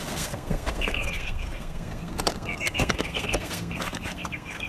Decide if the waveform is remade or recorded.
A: remade